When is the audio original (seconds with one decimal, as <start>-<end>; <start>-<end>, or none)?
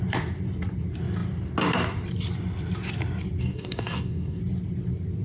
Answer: 0.0-3.4; 4.4-5.2